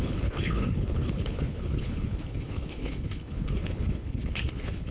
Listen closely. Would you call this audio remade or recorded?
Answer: remade